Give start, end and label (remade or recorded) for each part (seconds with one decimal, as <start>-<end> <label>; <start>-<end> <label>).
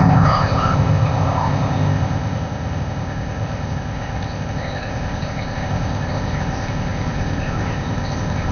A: 0.0-8.5 remade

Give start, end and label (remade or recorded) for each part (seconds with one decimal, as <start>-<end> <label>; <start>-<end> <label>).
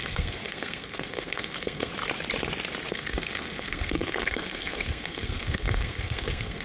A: 0.0-1.9 remade; 1.9-2.9 recorded; 2.9-6.6 remade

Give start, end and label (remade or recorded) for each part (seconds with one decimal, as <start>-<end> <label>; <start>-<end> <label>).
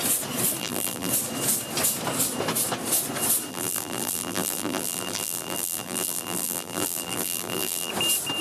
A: 0.0-0.6 recorded; 0.6-1.1 remade; 1.1-3.5 recorded; 3.5-7.9 remade; 7.9-8.4 recorded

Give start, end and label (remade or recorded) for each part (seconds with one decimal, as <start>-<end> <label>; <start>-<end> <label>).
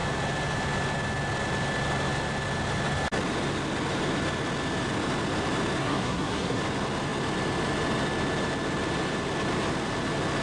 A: 0.0-5.8 recorded; 5.8-6.6 remade; 6.6-10.4 recorded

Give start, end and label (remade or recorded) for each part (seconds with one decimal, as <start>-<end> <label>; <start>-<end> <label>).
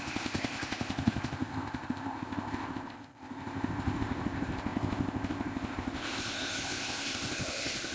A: 0.0-7.9 remade